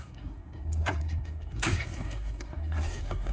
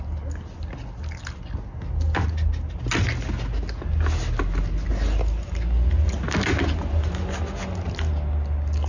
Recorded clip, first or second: second